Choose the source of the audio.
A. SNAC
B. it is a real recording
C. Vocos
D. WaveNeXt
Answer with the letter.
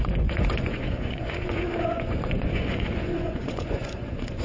C